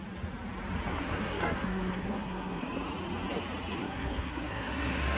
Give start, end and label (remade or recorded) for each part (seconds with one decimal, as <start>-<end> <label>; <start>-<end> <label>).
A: 0.0-0.9 recorded; 0.9-2.6 remade; 2.6-3.8 recorded; 3.8-5.2 remade